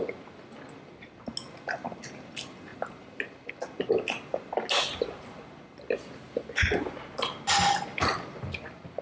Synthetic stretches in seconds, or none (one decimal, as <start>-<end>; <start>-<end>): 7.9-9.0

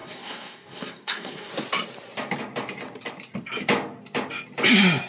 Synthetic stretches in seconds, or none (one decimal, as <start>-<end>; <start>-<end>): 0.0-1.5

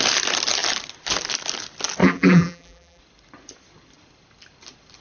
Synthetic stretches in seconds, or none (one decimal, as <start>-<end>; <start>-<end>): 2.0-3.0

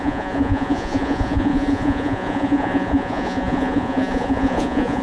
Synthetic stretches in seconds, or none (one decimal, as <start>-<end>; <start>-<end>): 0.0-5.0

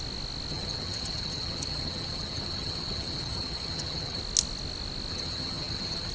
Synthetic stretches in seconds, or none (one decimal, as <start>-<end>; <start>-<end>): 0.5-4.2; 5.1-6.1

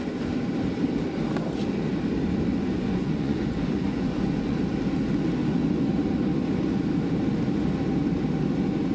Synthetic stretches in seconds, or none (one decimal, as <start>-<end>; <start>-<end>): 2.5-4.6

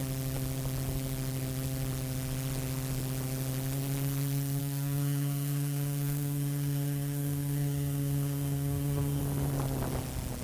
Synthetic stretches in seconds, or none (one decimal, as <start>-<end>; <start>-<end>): 4.6-9.2